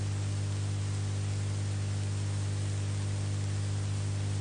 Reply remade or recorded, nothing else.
recorded